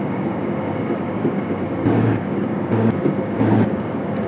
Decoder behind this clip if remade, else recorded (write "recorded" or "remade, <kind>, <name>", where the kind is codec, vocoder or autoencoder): remade, codec, DAC